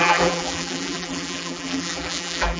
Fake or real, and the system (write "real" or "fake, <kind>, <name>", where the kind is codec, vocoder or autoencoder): fake, vocoder, BigVGAN v2